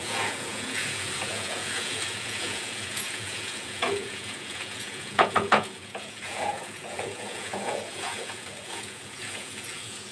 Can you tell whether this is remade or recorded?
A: remade